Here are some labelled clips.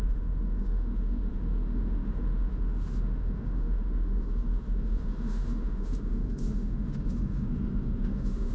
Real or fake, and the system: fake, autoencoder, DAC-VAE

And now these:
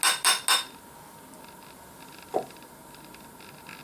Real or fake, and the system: real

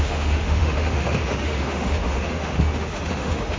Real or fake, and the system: fake, autoencoder, DAC-VAE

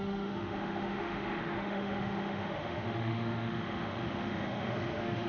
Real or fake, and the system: fake, autoencoder, DAC-VAE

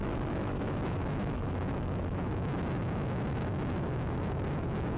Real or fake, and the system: fake, autoencoder, DAC-VAE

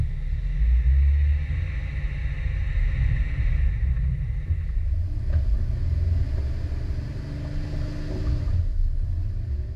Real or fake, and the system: real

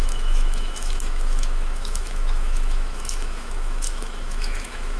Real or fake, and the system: fake, autoencoder, DAC-VAE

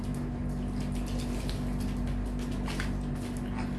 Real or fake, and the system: real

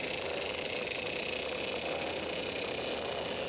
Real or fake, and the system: real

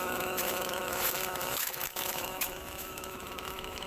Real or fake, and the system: fake, autoencoder, DAC-VAE